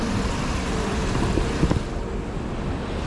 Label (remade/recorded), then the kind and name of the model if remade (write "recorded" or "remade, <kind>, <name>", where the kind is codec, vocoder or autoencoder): recorded